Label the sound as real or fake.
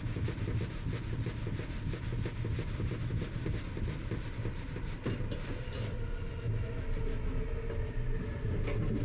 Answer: real